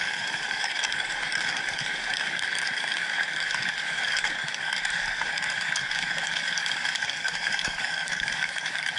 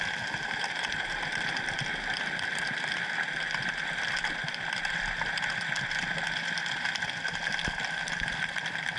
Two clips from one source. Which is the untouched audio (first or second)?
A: second